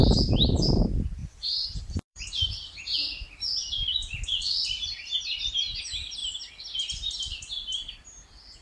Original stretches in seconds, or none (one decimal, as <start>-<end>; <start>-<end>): 6.2-7.9